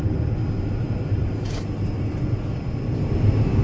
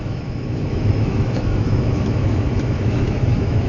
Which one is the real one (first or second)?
first